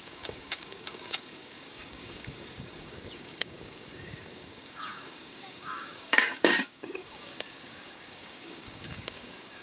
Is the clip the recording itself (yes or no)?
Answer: no